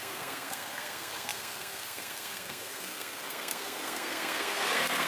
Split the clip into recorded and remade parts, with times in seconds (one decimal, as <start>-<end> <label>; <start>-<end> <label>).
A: 0.0-5.1 remade